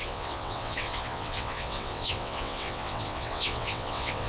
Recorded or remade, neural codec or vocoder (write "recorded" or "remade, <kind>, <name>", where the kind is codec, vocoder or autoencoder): remade, vocoder, WaveNeXt